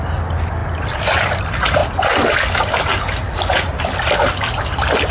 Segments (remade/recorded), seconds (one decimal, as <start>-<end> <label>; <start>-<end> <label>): 0.0-1.8 remade; 1.8-5.1 recorded